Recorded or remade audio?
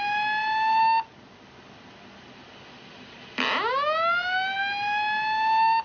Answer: recorded